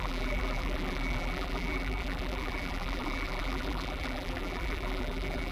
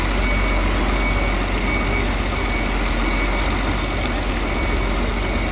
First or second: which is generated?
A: first